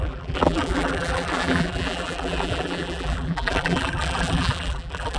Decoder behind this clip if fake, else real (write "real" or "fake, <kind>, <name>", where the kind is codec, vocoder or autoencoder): fake, vocoder, BigVGAN v2